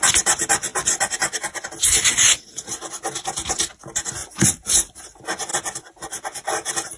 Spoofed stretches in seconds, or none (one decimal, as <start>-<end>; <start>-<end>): 5.5-7.0